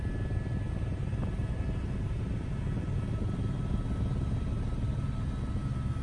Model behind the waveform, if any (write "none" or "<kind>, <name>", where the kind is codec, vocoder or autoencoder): none